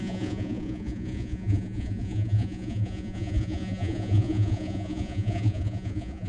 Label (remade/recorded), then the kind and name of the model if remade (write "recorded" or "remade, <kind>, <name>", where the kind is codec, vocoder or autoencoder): remade, vocoder, Vocos